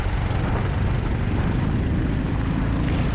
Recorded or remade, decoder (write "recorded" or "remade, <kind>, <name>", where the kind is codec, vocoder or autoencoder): recorded